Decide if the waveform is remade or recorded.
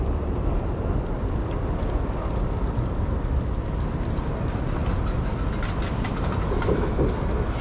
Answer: recorded